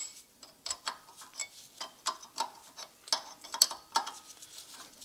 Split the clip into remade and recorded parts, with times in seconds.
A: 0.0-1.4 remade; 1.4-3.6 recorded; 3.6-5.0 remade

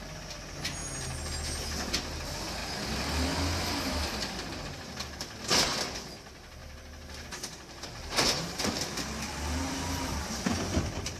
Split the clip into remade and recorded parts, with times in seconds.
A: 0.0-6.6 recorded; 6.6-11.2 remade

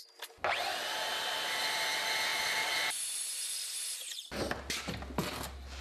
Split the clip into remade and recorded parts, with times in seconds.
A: 0.0-2.3 recorded; 2.3-3.9 remade; 3.9-5.8 recorded

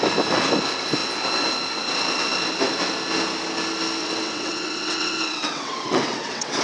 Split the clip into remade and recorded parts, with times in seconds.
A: 0.0-4.0 recorded; 4.0-6.6 remade

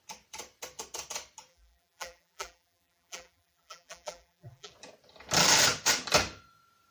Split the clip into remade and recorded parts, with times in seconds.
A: 0.0-1.5 recorded; 1.5-4.7 remade; 4.7-6.9 recorded